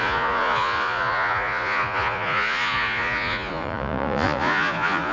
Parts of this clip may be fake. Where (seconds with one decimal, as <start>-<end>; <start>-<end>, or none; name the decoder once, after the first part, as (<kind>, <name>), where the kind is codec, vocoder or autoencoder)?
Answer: 0.0-5.1 (vocoder, Vocos)